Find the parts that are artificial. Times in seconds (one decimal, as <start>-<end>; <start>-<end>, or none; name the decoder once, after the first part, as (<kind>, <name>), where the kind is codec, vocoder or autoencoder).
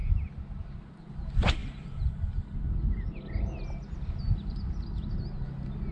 none